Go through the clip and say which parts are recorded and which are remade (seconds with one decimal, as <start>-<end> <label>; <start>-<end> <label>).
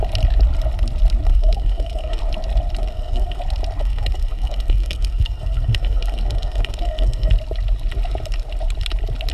0.0-1.3 recorded; 1.3-2.2 remade; 2.2-2.8 recorded; 2.8-3.4 remade; 3.4-3.8 recorded; 3.8-7.3 remade; 7.3-9.3 recorded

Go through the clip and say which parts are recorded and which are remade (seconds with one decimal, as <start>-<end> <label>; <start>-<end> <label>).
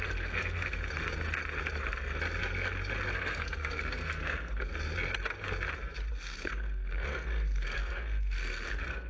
0.0-0.8 remade; 0.8-3.1 recorded; 3.1-4.7 remade; 4.7-6.1 recorded; 6.1-9.1 remade